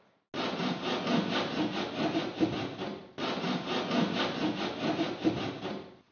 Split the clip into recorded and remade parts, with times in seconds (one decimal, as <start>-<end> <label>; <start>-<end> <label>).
0.0-6.1 recorded